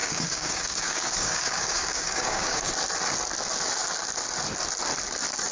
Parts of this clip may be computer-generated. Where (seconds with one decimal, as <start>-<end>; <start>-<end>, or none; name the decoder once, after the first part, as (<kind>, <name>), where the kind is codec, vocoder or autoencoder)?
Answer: 0.0-2.7 (codec, DAC)